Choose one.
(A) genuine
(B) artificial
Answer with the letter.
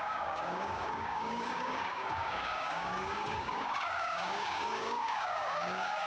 B